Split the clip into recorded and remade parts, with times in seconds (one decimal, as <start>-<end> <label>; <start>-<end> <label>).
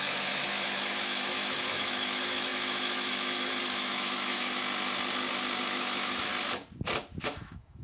0.0-4.6 remade; 4.6-5.6 recorded; 5.6-6.3 remade; 6.3-7.2 recorded; 7.2-7.8 remade